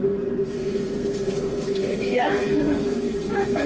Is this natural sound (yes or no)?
no